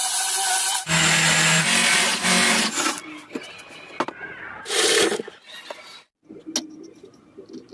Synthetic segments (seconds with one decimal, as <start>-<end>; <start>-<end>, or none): none